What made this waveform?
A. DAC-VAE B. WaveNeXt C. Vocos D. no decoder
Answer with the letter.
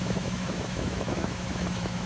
A